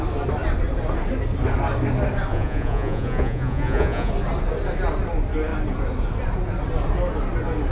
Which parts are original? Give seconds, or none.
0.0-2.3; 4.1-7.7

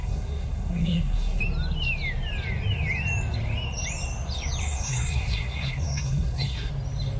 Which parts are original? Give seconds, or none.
1.4-4.6; 6.7-7.2

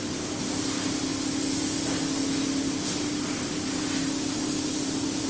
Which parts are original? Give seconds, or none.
0.0-5.3

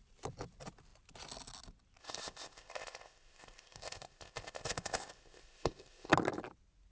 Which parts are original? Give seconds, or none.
0.0-2.0; 6.1-6.9

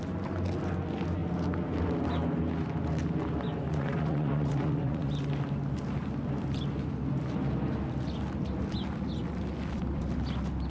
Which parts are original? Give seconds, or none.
0.0-3.7; 5.1-10.7